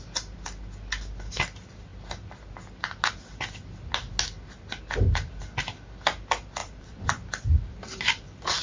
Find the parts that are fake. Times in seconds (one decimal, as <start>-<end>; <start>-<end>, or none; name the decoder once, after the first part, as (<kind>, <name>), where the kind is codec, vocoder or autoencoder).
6.6-7.4 (vocoder, BigVGAN v2)